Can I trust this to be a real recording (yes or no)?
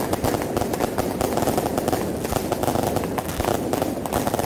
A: yes